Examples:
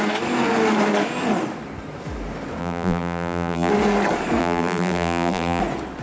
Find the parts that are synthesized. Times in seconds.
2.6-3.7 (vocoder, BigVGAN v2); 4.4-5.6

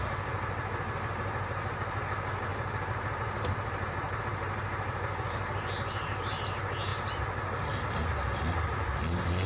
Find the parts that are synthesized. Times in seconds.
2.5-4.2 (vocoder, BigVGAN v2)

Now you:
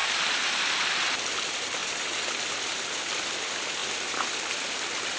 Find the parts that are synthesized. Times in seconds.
0.0-1.8 (vocoder, BigVGAN v2); 2.4-5.2

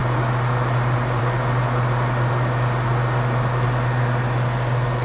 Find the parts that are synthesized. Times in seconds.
none

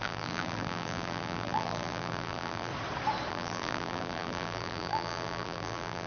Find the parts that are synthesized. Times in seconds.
0.0-2.7 (vocoder, BigVGAN v2); 3.3-6.1

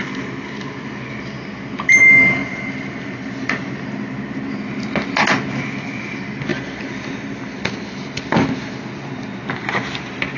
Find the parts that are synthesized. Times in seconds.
2.4-4.5 (vocoder, BigVGAN v2); 6.5-8.7